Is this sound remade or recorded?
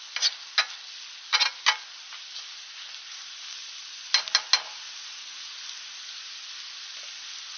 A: recorded